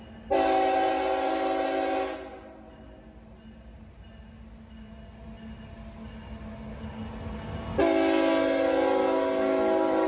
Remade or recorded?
recorded